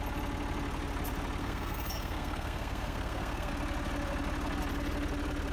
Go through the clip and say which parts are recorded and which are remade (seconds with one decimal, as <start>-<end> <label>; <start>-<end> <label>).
0.0-1.4 recorded; 1.4-3.5 remade; 3.5-5.5 recorded